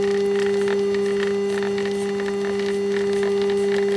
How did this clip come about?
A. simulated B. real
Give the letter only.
B